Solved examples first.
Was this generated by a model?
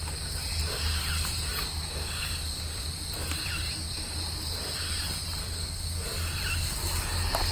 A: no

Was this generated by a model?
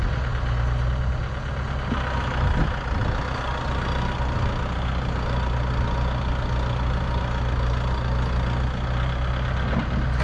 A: no